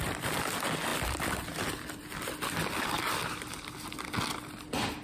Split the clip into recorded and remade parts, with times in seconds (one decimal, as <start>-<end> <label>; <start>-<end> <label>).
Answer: 0.0-5.0 recorded